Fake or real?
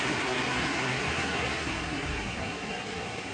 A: fake